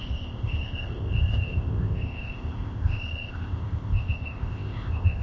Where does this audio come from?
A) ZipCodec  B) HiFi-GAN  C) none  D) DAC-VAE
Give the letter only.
A